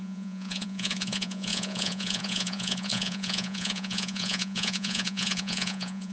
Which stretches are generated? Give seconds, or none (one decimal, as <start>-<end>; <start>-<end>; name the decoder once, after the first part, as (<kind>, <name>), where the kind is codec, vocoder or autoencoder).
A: 0.0-6.1 (vocoder, Vocos)